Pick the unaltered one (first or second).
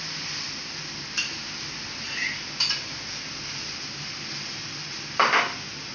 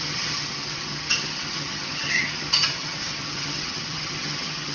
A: first